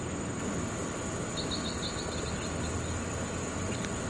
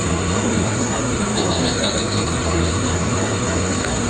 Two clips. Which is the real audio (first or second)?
first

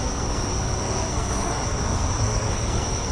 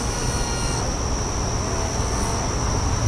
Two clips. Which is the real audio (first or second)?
second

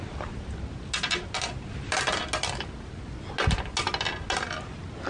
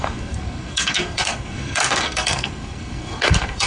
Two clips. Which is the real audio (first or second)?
first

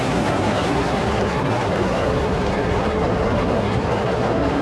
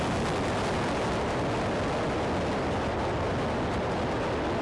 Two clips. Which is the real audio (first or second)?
second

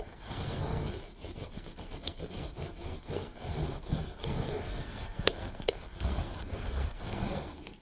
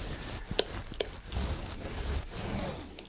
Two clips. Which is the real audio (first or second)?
second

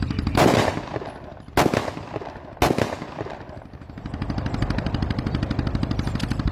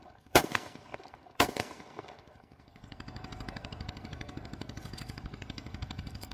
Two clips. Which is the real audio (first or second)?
first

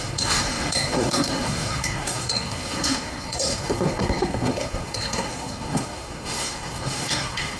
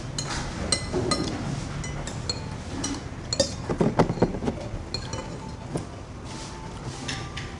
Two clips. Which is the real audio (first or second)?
second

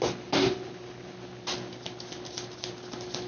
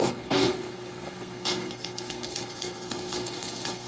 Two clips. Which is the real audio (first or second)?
first